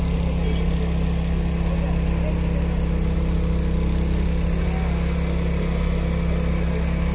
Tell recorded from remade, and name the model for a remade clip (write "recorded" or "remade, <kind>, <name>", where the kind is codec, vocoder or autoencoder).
recorded